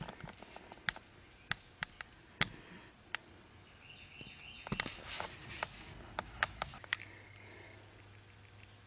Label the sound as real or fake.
real